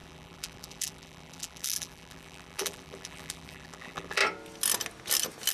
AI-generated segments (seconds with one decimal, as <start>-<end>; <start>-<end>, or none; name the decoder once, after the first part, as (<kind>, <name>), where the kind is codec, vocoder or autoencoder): 0.0-4.2 (vocoder, BigVGAN v2)